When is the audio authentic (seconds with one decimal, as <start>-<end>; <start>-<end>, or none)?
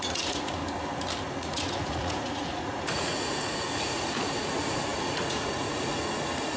0.6-1.3